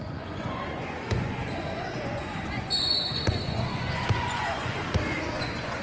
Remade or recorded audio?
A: remade